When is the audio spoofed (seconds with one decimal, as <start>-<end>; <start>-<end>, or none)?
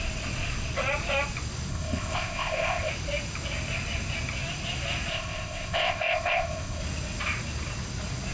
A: 1.7-2.9; 5.1-6.8